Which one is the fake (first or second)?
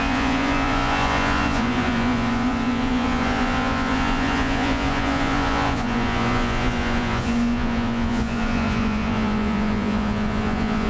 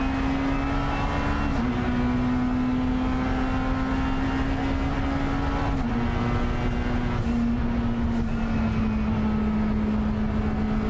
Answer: first